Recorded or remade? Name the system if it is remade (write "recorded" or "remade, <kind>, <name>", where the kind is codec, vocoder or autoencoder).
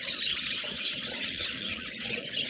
remade, vocoder, Vocos